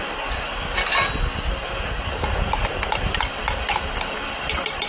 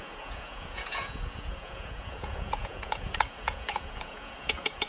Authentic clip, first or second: first